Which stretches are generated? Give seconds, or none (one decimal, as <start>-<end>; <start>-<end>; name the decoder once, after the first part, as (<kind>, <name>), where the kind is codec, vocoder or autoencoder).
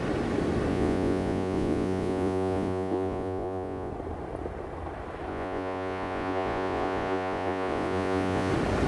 0.7-3.9 (vocoder, Vocos); 5.3-8.5